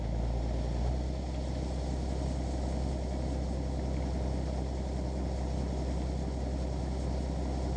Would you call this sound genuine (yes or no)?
yes